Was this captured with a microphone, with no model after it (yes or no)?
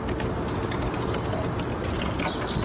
yes